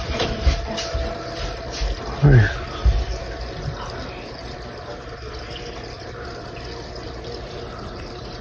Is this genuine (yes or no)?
yes